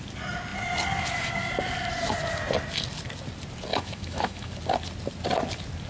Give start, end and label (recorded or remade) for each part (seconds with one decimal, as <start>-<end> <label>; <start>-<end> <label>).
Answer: 0.0-3.7 recorded; 3.7-4.5 remade; 4.5-5.9 recorded